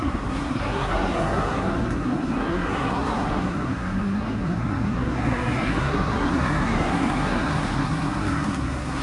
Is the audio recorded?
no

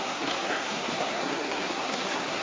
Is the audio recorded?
no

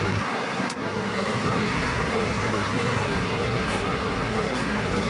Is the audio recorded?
no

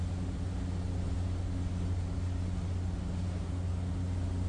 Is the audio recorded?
yes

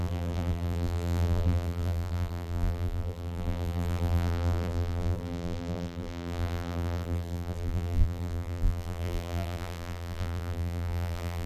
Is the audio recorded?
no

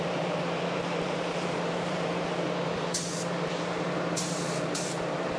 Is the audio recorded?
no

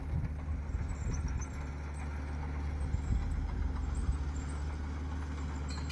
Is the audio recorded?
yes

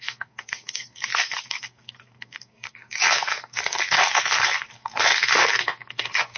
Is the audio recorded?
no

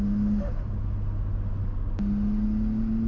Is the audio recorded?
yes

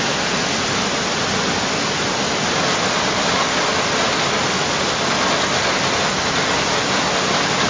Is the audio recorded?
yes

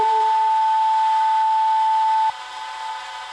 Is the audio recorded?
yes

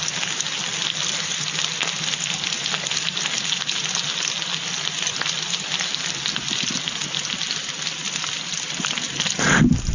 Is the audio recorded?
yes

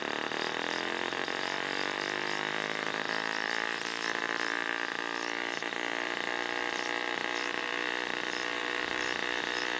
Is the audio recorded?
no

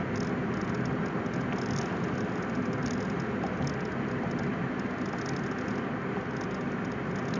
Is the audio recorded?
yes